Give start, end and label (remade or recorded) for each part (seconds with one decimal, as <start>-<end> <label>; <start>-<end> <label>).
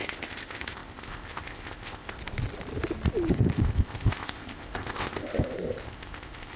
0.0-2.2 remade; 2.2-3.3 recorded; 3.3-6.6 remade